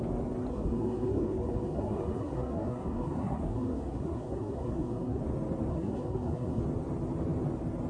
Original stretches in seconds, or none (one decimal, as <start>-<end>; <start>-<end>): 0.0-0.5; 5.2-5.7; 6.6-7.9